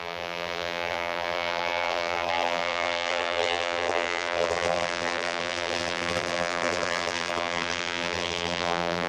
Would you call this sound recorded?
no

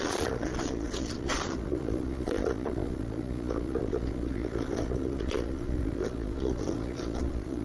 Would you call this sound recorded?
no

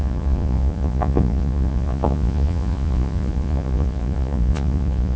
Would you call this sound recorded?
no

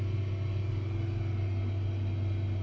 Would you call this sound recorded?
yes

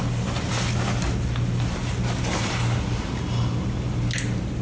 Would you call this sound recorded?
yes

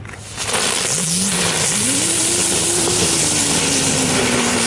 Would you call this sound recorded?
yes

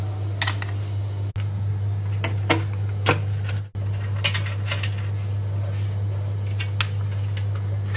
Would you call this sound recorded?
yes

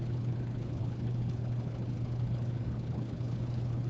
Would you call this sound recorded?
no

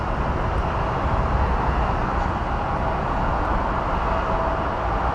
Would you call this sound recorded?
yes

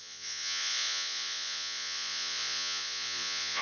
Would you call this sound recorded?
no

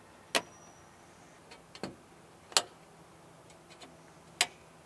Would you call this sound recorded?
yes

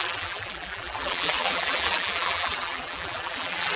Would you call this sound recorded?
no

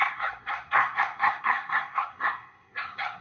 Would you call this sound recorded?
no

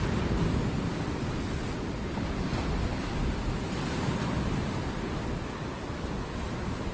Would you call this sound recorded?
yes